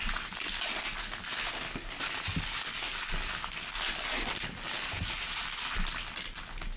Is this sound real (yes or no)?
yes